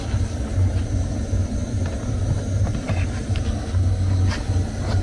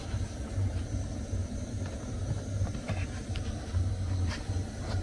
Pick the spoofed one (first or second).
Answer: second